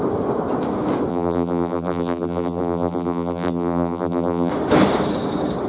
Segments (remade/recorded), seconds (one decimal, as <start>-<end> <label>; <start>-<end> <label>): 0.0-1.1 recorded; 1.1-4.5 remade; 4.5-5.7 recorded